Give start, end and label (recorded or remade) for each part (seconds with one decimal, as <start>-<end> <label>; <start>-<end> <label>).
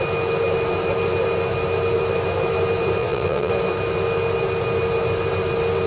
0.0-3.0 recorded; 3.0-3.5 remade; 3.5-5.9 recorded